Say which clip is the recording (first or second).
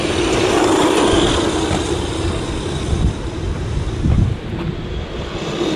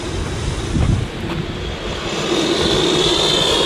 second